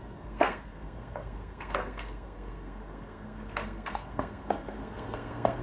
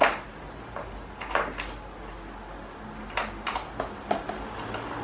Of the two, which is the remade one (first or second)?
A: first